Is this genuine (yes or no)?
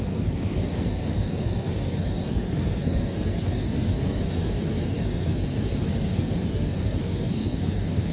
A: no